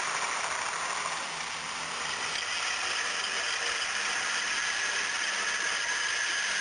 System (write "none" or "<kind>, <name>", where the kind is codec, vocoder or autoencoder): none